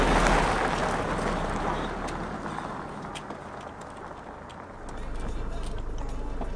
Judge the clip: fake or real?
real